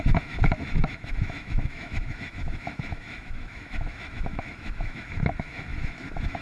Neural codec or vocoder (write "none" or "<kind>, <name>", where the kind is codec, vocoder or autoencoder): autoencoder, DAC-VAE